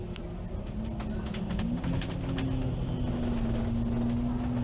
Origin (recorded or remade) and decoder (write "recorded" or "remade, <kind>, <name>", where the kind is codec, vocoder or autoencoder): recorded